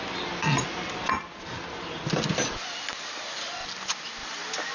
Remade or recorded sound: recorded